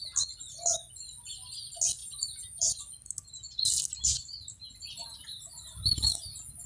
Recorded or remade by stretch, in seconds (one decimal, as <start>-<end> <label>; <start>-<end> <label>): 0.0-2.0 recorded; 2.0-2.8 remade; 2.8-6.7 recorded

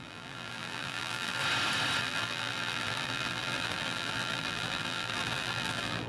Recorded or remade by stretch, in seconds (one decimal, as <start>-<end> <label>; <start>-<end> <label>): 0.0-1.4 remade; 1.4-2.0 recorded; 2.0-6.1 remade